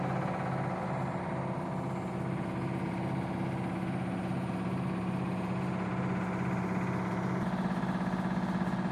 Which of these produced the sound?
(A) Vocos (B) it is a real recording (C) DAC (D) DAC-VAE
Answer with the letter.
B